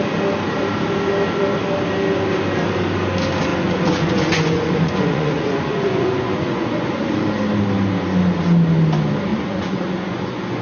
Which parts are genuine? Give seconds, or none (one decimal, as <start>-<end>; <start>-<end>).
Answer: 0.0-3.5; 7.4-9.3